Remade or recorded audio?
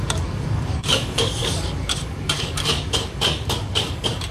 remade